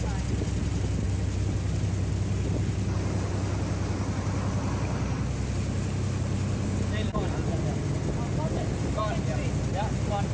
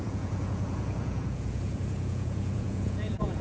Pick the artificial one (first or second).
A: second